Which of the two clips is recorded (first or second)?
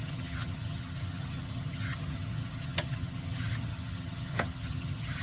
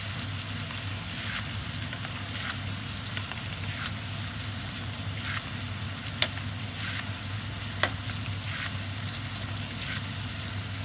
second